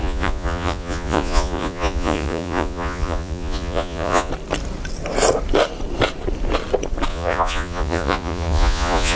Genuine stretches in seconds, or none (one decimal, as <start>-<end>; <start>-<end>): 4.3-7.1